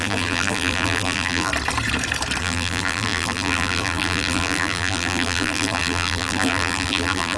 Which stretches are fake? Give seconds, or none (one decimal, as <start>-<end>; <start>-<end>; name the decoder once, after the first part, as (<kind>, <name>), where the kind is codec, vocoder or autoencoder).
0.0-1.5 (vocoder, BigVGAN v2); 2.4-7.4